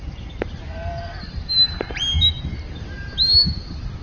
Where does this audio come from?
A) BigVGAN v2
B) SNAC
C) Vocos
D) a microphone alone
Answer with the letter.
A